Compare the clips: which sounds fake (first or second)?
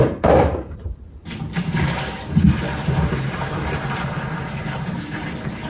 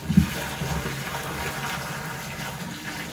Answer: first